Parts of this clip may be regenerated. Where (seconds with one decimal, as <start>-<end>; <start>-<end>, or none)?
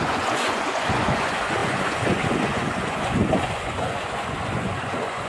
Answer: 0.0-5.3